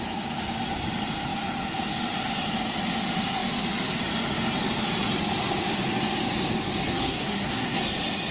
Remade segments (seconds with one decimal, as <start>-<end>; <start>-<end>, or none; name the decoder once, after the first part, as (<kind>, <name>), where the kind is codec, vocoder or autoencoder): 6.9-7.8 (codec, SNAC)